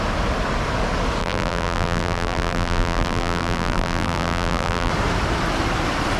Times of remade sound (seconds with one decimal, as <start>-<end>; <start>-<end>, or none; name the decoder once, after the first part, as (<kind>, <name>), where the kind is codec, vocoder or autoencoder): 1.2-4.9 (vocoder, BigVGAN v2)